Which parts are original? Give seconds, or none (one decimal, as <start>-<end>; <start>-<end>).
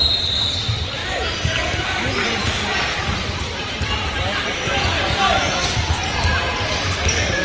0.0-1.0; 4.2-7.4